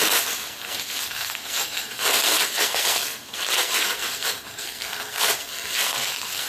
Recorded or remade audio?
remade